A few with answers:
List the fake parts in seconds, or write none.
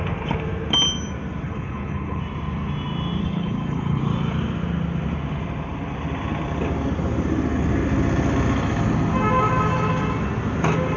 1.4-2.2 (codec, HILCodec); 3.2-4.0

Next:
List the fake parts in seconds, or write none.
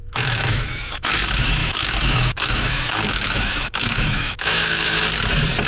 0.0-1.2 (autoencoder, DAC-VAE); 1.6-5.0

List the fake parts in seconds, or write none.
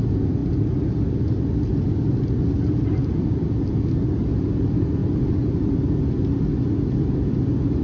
3.0-3.7 (vocoder, BigVGAN v2); 5.0-5.6; 6.5-7.8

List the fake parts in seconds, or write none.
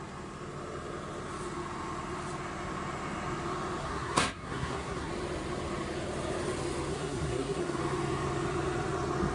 3.8-5.1 (codec, SNAC); 6.9-7.8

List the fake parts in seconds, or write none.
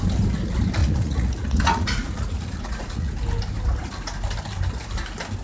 0.8-3.1 (vocoder, Vocos)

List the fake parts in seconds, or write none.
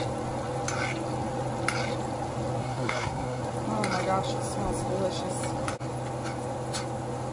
2.6-3.4 (codec, SNAC)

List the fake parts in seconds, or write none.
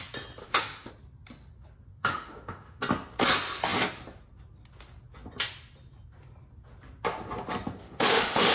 0.4-0.9 (autoencoder, DAC-VAE); 1.9-2.8; 7.8-8.5